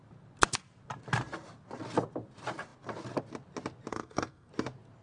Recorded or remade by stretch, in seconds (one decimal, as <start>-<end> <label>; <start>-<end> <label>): 0.0-3.9 recorded; 3.9-4.5 remade; 4.5-5.0 recorded